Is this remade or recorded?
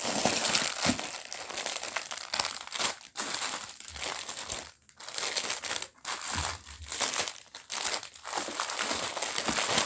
recorded